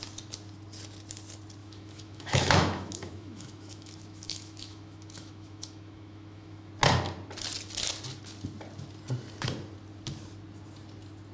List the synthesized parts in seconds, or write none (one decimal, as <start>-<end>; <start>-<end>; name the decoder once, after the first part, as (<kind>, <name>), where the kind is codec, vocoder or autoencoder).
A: 1.6-6.7 (autoencoder, DAC-VAE)